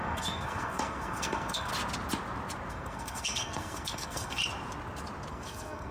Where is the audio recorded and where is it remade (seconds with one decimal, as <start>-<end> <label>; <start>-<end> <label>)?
0.0-1.7 remade; 1.7-2.7 recorded; 2.7-4.4 remade; 4.4-5.3 recorded; 5.3-5.9 remade